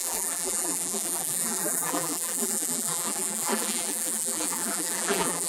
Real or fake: fake